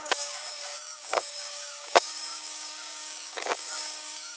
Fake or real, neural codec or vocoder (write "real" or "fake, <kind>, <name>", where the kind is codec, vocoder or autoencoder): fake, codec, DAC